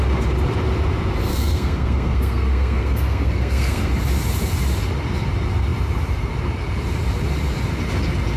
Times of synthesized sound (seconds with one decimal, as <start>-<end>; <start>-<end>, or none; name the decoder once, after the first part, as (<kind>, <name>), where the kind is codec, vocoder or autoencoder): 1.3-3.9 (codec, SNAC)